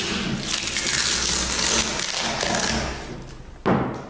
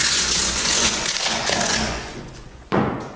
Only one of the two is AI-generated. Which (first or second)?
second